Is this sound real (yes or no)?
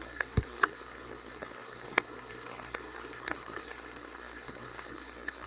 no